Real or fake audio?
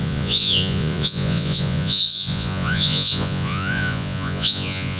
fake